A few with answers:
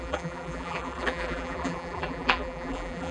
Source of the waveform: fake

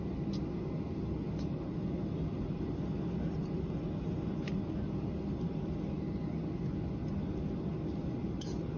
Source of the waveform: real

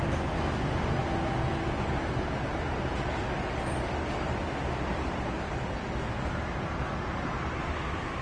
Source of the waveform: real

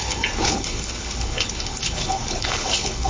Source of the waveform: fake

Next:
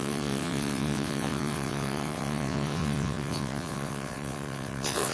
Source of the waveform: fake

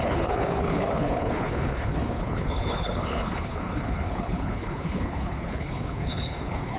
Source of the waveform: fake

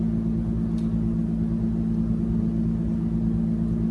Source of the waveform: real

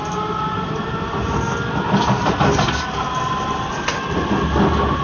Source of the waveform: real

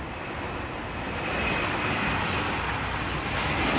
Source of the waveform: real